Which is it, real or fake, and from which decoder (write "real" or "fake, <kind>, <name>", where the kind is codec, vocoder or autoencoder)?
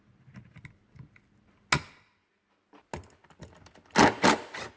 real